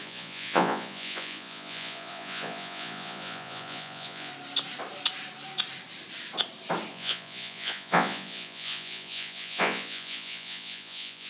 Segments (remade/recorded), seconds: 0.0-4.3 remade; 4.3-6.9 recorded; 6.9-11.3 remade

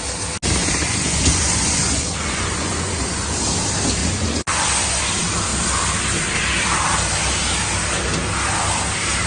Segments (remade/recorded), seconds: 0.0-0.6 recorded; 0.6-3.4 remade; 3.4-4.0 recorded; 4.0-5.0 remade; 5.0-9.3 recorded

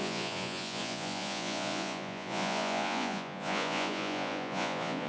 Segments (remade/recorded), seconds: 0.0-5.1 remade